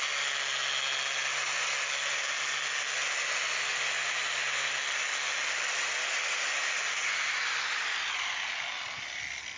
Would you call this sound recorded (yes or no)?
yes